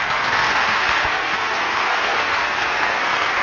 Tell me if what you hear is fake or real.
fake